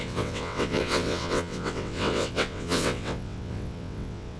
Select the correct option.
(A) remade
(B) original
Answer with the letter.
A